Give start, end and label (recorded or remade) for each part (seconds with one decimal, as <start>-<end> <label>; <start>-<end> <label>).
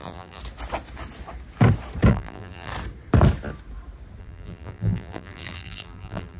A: 0.0-0.4 remade; 0.4-2.1 recorded; 2.1-2.7 remade; 2.7-4.2 recorded; 4.2-6.4 remade